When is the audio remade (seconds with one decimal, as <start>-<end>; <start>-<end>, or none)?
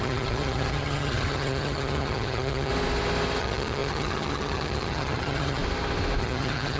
0.0-2.7; 3.4-5.6; 6.2-6.8